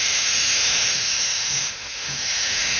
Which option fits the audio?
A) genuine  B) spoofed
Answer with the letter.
B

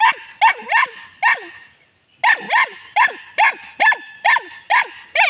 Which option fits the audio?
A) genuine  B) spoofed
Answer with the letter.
A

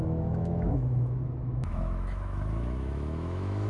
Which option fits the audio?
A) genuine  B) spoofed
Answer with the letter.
B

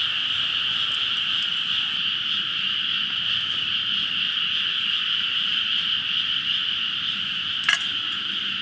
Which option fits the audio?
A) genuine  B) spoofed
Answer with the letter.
A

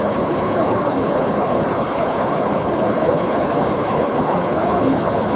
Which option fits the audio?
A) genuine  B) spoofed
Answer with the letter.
B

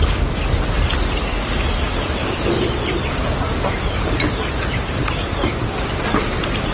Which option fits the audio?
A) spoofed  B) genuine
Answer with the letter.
A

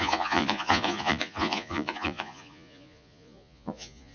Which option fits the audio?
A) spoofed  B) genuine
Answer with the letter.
A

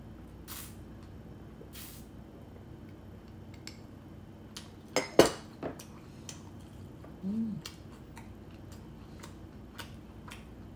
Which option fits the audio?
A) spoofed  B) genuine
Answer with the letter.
B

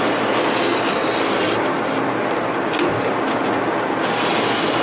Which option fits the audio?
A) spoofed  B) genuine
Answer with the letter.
B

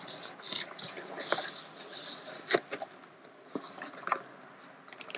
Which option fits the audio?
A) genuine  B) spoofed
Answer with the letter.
A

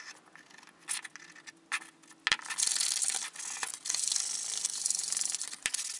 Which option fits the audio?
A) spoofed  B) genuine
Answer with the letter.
B